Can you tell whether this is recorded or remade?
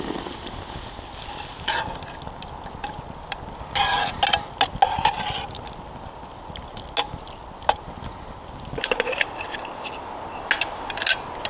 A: recorded